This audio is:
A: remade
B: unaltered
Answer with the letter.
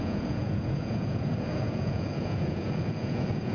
A